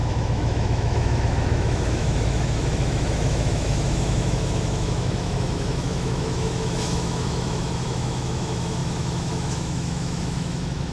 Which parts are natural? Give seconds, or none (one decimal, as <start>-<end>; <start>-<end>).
none